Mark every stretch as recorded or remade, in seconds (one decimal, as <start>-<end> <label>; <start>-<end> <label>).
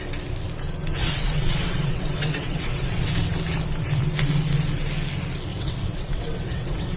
0.0-1.0 recorded; 1.0-3.1 remade; 3.1-5.5 recorded; 5.5-7.0 remade